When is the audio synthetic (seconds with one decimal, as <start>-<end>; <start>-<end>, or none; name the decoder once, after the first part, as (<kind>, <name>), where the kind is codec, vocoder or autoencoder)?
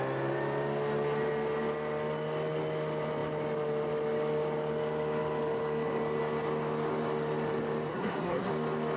7.9-8.5 (codec, SNAC)